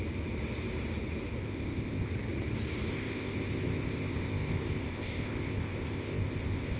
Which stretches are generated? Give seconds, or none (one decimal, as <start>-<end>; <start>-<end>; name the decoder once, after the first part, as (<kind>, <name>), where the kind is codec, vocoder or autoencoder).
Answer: 1.4-2.1 (codec, ZipCodec); 2.9-6.8